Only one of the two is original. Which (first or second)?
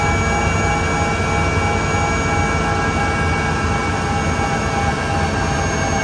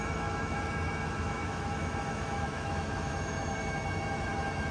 first